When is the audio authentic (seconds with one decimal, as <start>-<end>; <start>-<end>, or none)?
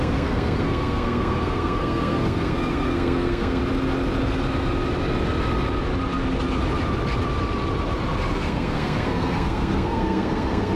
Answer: 3.6-8.3